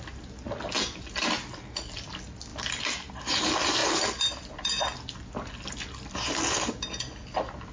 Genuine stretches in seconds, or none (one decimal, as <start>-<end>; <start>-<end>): 0.0-7.7